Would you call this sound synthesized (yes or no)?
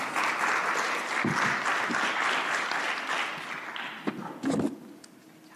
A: no